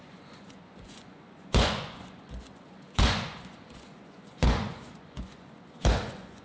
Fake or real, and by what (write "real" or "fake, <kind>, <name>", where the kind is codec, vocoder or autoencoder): fake, vocoder, Vocos